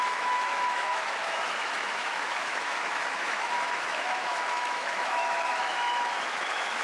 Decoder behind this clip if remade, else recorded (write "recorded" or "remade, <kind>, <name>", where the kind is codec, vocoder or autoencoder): remade, autoencoder, DAC-VAE